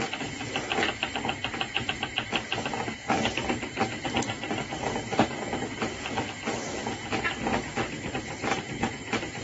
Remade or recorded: recorded